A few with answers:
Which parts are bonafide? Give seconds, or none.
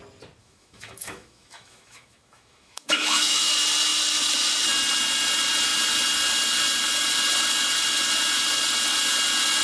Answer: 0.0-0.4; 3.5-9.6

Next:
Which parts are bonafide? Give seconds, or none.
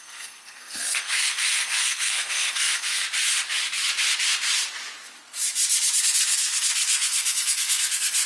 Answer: 3.0-6.0